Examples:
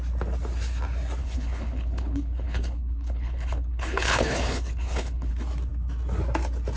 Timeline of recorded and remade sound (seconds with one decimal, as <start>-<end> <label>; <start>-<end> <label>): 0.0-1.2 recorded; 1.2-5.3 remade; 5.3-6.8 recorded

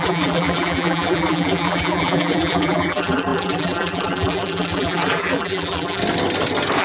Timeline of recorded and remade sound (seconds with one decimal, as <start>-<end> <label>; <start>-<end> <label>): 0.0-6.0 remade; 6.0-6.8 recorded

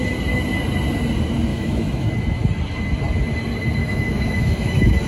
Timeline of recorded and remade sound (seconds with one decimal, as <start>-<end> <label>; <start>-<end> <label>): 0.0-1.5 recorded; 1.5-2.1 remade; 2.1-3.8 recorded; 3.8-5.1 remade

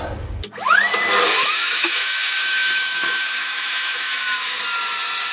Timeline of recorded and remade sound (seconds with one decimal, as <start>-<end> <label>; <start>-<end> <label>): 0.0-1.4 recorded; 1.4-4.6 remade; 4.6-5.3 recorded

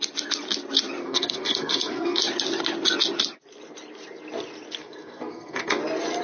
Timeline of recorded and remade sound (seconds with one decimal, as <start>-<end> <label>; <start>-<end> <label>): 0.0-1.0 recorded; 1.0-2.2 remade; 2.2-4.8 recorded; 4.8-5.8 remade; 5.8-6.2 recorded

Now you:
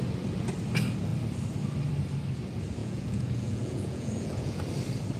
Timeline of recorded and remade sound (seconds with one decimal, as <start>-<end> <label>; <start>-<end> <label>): 0.0-2.8 recorded; 2.8-4.6 remade; 4.6-5.2 recorded

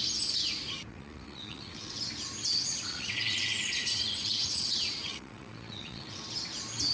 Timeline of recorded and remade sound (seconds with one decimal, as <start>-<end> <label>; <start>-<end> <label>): 0.0-0.9 recorded; 0.9-2.0 remade; 2.0-2.5 recorded; 2.5-6.2 remade; 6.2-6.9 recorded